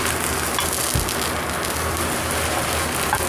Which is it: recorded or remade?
recorded